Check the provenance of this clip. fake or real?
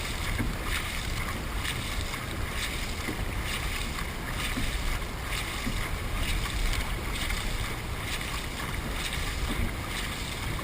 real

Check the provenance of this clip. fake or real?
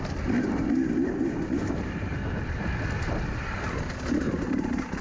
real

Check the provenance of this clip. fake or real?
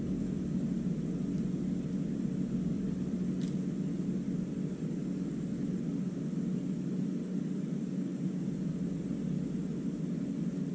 real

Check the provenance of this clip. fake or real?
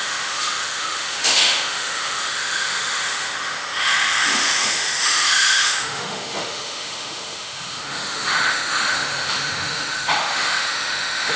fake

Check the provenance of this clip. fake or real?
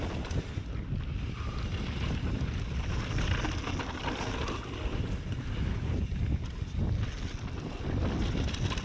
real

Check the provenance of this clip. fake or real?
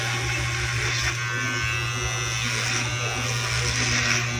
real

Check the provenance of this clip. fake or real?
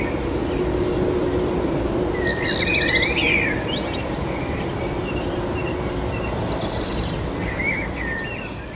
real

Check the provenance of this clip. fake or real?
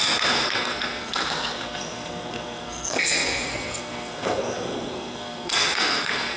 fake